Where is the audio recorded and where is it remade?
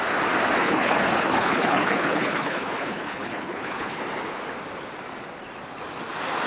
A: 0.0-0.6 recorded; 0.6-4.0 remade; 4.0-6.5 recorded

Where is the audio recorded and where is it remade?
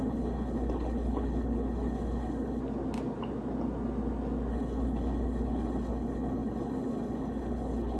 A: 0.0-2.6 remade; 2.6-4.5 recorded; 4.5-8.0 remade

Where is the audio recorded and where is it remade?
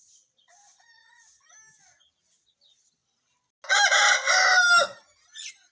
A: 0.0-5.7 recorded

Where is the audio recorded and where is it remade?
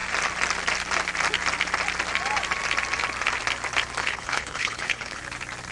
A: 0.0-4.0 recorded; 4.0-5.2 remade; 5.2-5.7 recorded